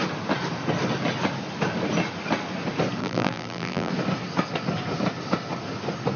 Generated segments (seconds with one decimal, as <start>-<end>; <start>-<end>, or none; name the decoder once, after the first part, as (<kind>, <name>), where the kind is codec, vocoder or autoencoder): 3.0-3.9 (vocoder, BigVGAN v2)